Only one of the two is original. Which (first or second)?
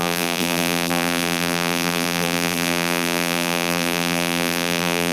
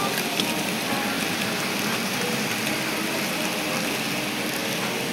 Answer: second